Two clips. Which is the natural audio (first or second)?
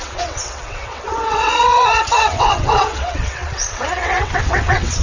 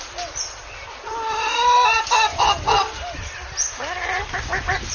second